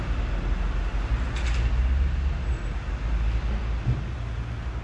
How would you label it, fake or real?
real